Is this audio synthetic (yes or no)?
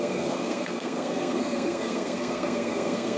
yes